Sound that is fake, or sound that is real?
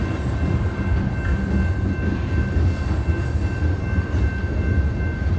real